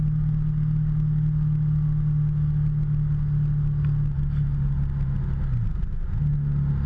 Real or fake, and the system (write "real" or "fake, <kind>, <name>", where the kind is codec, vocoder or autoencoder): real